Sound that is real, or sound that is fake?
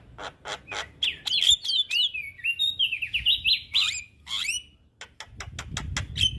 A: real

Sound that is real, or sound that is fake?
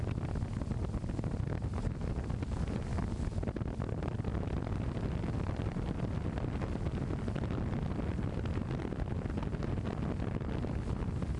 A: real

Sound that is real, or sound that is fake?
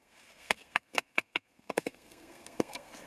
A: fake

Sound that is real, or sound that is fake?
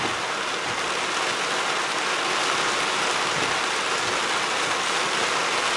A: real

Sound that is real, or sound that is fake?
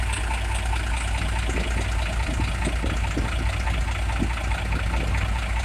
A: real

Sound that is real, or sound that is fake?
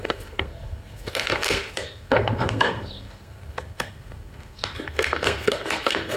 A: fake